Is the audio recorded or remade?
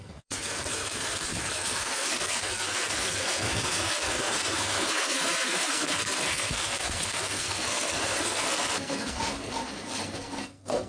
remade